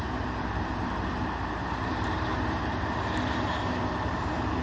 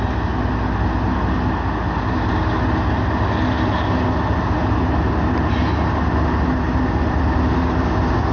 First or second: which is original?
second